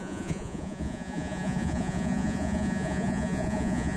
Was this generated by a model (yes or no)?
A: yes